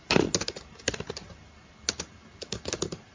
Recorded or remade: recorded